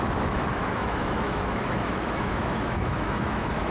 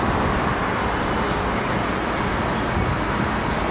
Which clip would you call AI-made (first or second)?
first